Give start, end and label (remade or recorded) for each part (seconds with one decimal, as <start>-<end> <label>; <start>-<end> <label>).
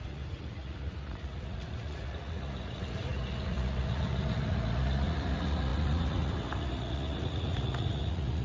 0.0-8.4 remade